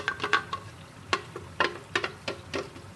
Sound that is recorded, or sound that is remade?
recorded